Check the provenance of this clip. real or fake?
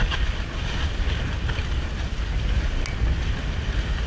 real